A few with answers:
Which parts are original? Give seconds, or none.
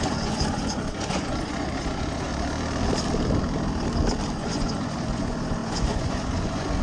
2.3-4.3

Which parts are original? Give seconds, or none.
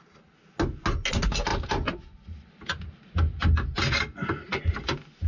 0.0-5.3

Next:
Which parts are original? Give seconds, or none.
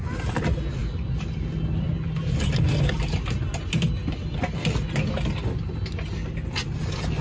0.0-7.2